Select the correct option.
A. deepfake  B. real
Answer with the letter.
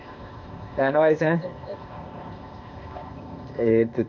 A